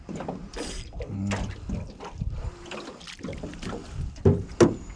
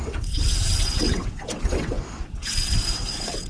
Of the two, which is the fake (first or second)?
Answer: second